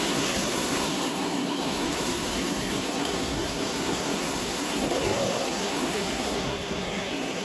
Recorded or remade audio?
remade